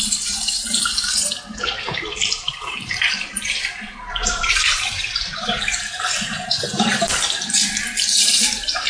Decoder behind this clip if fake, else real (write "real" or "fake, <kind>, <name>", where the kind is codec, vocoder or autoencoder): fake, vocoder, BigVGAN v2